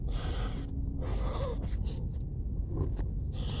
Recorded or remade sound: recorded